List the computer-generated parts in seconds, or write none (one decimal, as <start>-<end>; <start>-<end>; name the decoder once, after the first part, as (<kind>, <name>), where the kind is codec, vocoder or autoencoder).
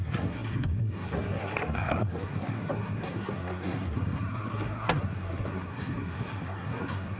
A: 0.0-7.2 (codec, SNAC)